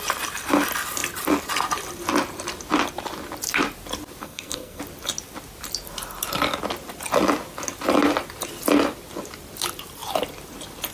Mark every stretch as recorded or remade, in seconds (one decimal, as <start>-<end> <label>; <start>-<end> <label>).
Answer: 0.0-4.2 recorded; 4.2-4.8 remade; 4.8-10.9 recorded